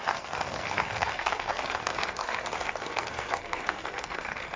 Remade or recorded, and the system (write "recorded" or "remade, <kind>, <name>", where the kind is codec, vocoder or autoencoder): remade, codec, SNAC